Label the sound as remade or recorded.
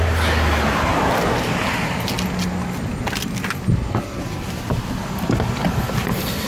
recorded